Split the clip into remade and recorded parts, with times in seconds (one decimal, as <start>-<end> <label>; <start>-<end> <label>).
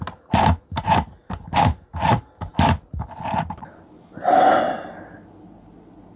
0.0-6.2 recorded